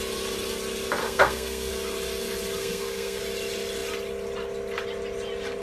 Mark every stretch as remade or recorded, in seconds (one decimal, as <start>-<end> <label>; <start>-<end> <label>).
0.0-1.0 recorded; 1.0-1.7 remade; 1.7-2.6 recorded; 2.6-3.2 remade; 3.2-5.6 recorded